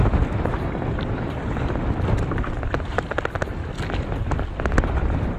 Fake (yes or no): no